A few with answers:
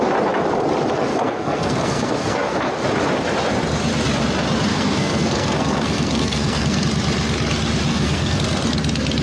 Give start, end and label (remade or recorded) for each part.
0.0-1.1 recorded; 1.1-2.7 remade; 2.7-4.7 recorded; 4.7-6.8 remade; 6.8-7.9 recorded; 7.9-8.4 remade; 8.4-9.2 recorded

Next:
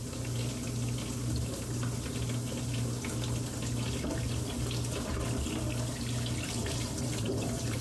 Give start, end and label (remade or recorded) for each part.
0.0-6.6 recorded; 6.6-7.8 remade

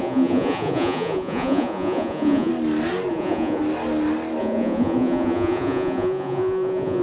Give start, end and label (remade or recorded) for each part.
0.0-2.5 remade; 2.5-3.1 recorded; 3.1-3.6 remade; 3.6-4.4 recorded; 4.4-7.0 remade

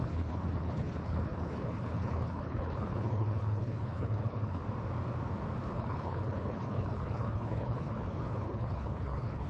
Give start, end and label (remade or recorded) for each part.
0.0-4.6 remade; 4.6-5.7 recorded; 5.7-9.5 remade

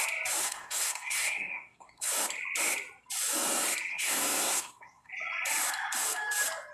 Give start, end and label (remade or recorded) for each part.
0.0-0.4 recorded; 0.4-2.1 remade; 2.1-3.9 recorded; 3.9-5.1 remade; 5.1-6.7 recorded

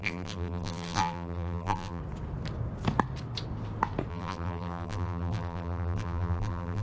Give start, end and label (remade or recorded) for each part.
0.0-2.0 remade; 2.0-4.1 recorded; 4.1-6.8 remade

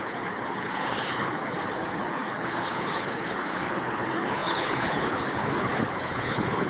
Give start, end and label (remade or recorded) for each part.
0.0-6.7 remade